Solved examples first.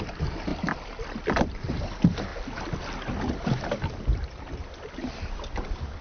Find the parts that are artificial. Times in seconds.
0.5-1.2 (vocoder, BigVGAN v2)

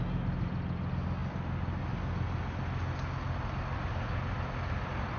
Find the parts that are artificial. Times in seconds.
none

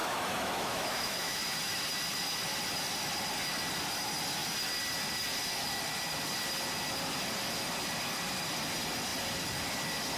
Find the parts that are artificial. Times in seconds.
0.0-1.4 (autoencoder, DAC-VAE)